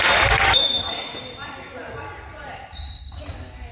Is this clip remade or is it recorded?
recorded